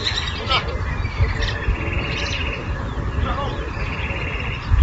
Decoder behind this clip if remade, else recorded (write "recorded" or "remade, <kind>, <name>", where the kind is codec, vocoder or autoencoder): remade, vocoder, BigVGAN v2